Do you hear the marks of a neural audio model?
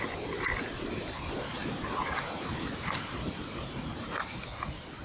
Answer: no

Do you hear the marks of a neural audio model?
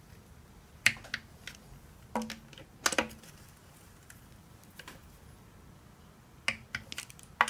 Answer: no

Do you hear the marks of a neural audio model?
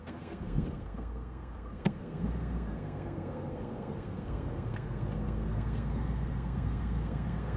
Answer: yes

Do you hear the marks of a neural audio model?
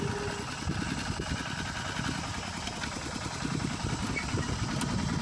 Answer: no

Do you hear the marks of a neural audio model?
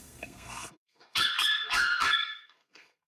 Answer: yes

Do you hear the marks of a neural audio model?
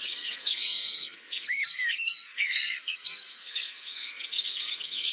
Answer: yes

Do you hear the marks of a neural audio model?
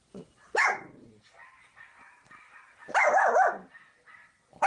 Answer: no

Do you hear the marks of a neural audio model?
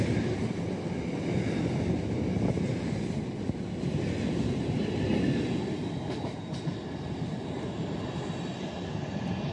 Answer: no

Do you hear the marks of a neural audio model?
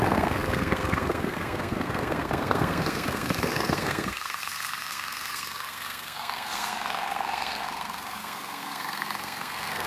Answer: yes